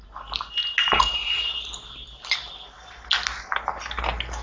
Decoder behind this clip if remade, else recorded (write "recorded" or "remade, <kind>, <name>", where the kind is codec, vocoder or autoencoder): recorded